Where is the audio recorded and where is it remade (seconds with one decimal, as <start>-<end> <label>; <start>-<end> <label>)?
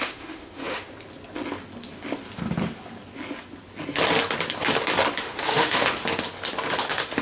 0.0-0.9 remade; 0.9-5.2 recorded; 5.2-6.0 remade; 6.0-6.8 recorded; 6.8-7.2 remade